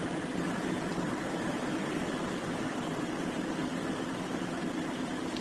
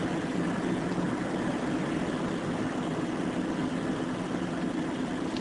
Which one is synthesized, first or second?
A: first